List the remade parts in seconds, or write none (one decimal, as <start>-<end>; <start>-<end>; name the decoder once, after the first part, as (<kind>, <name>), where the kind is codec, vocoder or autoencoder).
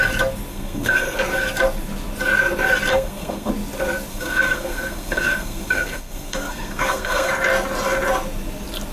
0.5-1.2 (codec, SNAC); 2.9-3.5; 4.1-7.3